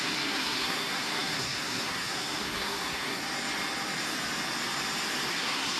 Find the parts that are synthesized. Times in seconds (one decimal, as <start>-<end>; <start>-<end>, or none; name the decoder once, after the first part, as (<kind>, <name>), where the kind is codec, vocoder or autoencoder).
0.0-3.2 (codec, SNAC); 5.3-5.8